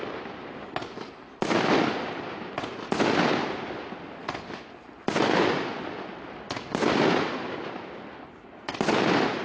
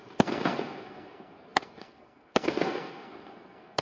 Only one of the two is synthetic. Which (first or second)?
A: second